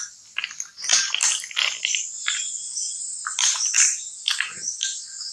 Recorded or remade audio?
recorded